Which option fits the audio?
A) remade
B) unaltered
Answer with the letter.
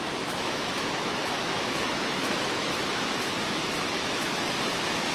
A